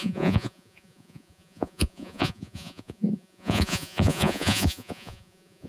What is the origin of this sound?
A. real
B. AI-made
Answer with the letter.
B